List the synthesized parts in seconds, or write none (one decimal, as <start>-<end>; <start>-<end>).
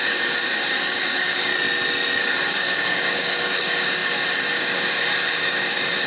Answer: 0.0-1.5; 2.2-6.1